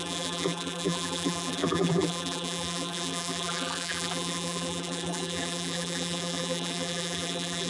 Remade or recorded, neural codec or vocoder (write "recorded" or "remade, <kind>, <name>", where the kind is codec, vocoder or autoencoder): remade, vocoder, BigVGAN v2